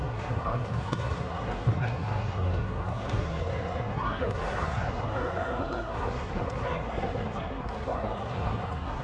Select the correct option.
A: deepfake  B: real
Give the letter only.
A